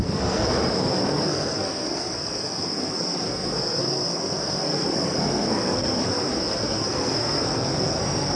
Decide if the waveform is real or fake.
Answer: fake